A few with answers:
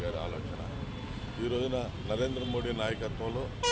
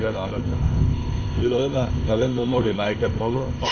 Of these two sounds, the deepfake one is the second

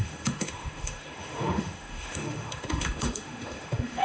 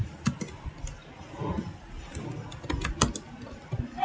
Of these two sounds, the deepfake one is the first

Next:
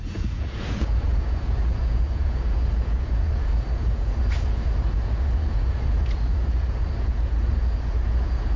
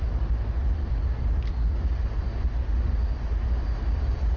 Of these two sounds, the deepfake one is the first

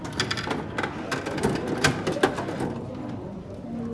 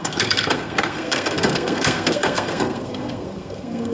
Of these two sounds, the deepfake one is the second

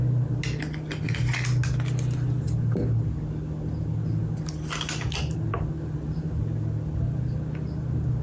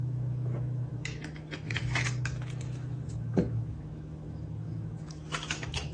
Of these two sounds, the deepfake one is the second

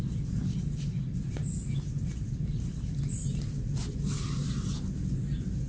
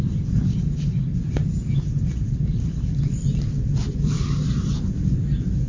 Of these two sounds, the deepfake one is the second